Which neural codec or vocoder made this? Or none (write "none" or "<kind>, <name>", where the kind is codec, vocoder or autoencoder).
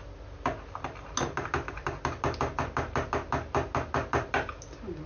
none